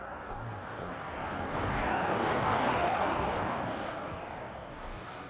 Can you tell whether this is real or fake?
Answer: fake